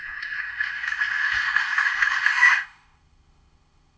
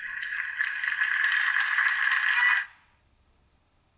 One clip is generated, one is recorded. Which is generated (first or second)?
first